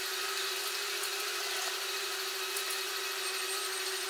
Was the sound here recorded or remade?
recorded